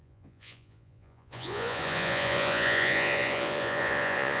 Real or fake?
fake